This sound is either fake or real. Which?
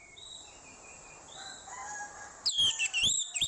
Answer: real